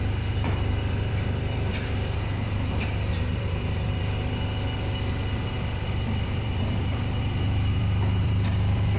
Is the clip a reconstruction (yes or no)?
yes